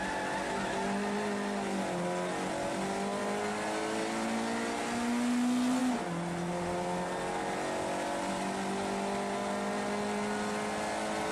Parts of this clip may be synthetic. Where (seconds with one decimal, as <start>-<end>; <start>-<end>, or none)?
none